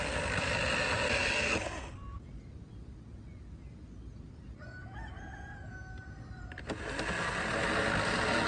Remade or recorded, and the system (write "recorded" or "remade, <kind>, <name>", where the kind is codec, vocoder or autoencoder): recorded